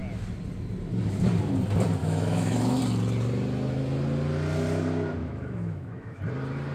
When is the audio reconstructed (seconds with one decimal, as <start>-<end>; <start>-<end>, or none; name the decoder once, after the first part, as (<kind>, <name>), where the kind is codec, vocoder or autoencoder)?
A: 2.0-2.8 (autoencoder, DAC-VAE); 5.2-6.2